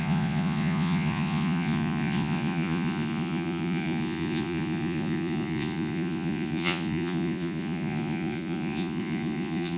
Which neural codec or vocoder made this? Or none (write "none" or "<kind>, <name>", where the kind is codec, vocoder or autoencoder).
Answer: vocoder, Vocos